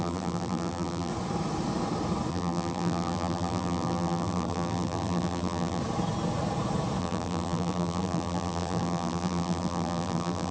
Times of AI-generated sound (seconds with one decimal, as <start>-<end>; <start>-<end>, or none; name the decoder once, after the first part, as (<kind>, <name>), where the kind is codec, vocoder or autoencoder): 0.0-1.1 (vocoder, BigVGAN v2); 2.3-5.8; 7.0-10.5